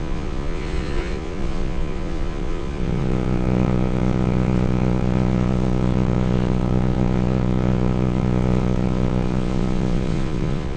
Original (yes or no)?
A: no